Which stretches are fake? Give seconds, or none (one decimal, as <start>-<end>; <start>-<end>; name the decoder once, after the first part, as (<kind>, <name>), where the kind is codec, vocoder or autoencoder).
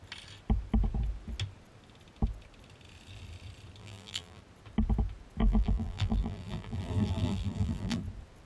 3.8-4.4 (vocoder, BigVGAN v2); 5.4-8.0